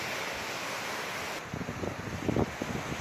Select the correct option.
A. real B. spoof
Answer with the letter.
A